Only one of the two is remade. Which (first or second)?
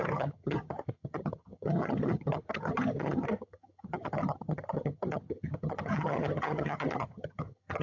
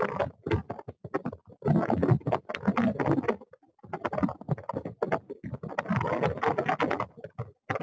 first